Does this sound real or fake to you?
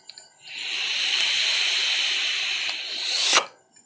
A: real